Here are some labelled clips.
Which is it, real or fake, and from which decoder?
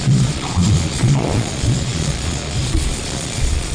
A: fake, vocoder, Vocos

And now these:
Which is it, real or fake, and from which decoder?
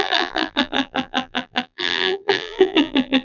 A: fake, vocoder, BigVGAN v2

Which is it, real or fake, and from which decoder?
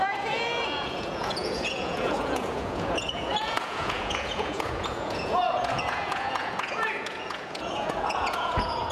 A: fake, vocoder, Vocos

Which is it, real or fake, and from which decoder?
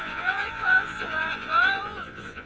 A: fake, vocoder, Vocos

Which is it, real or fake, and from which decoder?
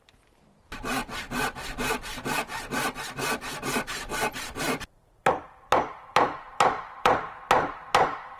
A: fake, vocoder, BigVGAN v2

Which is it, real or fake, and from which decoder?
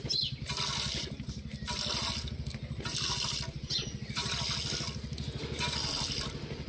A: real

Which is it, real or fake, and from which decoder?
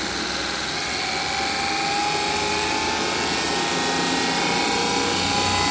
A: real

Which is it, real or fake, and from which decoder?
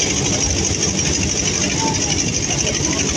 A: real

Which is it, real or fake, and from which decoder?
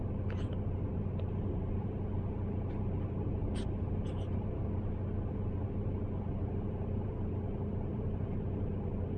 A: real